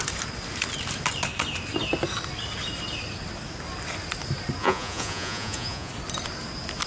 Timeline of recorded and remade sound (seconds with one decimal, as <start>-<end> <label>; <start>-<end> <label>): 0.0-4.6 recorded; 4.6-5.9 remade; 5.9-6.9 recorded